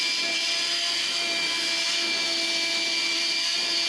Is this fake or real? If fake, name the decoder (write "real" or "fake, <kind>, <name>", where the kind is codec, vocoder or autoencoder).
real